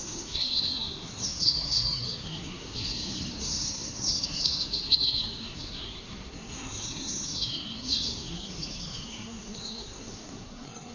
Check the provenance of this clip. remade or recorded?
remade